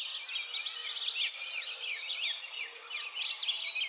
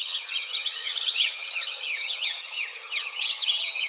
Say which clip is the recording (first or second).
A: first